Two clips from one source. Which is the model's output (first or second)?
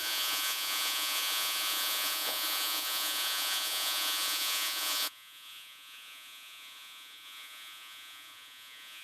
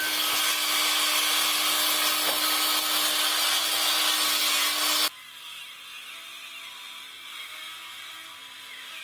first